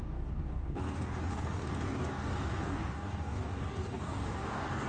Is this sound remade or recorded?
remade